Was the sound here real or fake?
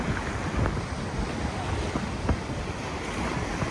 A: real